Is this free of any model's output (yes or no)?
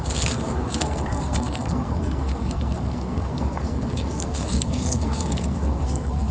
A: no